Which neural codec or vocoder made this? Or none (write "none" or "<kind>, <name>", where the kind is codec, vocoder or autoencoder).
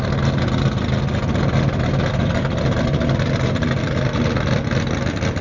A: none